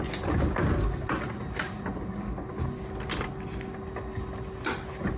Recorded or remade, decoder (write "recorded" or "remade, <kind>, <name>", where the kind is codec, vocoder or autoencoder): recorded